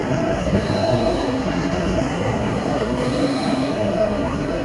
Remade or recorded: remade